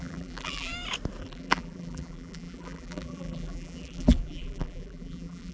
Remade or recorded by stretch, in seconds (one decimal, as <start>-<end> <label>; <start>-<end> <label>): 0.0-0.7 remade; 0.7-1.2 recorded; 1.2-5.5 remade